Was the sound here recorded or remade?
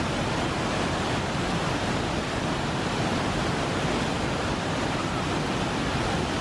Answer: recorded